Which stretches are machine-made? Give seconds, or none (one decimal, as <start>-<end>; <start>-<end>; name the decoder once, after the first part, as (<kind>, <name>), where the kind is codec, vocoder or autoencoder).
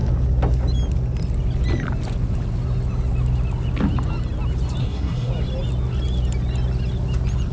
4.8-5.3 (codec, SNAC)